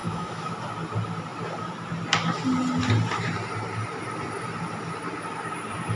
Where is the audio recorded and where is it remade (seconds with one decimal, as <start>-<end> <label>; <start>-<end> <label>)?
0.0-0.5 remade; 0.5-6.0 recorded